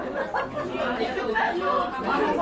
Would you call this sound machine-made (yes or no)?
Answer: yes